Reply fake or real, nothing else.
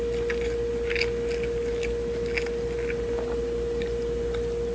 real